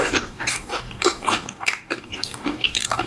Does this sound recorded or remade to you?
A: remade